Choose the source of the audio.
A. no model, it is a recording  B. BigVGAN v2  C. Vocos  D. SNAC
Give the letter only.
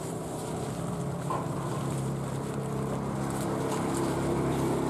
B